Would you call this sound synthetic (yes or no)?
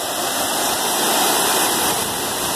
no